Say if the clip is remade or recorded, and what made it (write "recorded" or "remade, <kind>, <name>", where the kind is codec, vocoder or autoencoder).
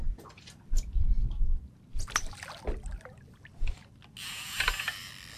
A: recorded